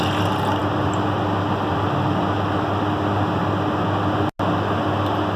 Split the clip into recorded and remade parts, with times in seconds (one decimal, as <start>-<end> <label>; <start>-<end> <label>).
0.0-5.4 recorded